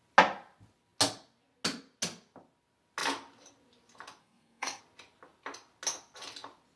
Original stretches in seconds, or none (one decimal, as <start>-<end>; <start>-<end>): 0.0-4.2; 4.8-6.8